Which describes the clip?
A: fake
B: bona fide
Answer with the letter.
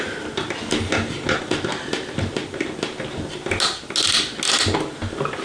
B